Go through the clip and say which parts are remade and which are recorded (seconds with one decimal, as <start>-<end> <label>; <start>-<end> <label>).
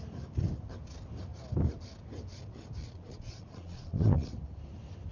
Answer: 0.0-2.8 recorded; 2.8-4.3 remade; 4.3-5.1 recorded